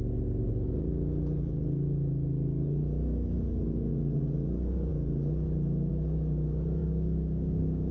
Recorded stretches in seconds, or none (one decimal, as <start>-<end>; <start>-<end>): 0.0-6.8